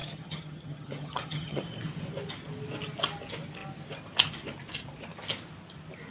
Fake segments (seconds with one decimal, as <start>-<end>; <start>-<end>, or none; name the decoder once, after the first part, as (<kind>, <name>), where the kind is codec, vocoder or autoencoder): 0.0-1.6 (vocoder, HiFi-GAN)